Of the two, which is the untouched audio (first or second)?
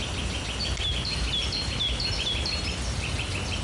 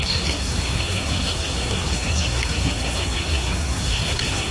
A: first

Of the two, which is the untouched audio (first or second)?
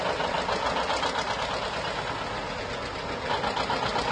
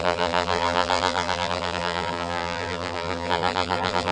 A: first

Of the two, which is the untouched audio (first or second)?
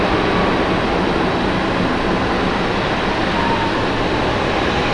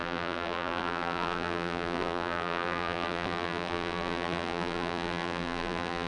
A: first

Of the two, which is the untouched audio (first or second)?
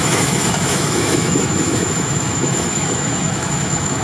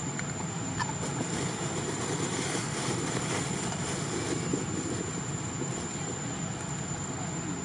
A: second